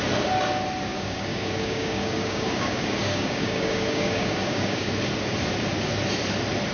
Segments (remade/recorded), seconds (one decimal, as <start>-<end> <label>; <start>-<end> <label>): 0.0-0.9 recorded; 0.9-4.9 remade; 4.9-6.7 recorded